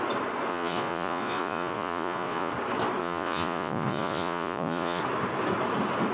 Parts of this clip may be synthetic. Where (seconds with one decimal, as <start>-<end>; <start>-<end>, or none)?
0.5-2.5; 3.0-5.0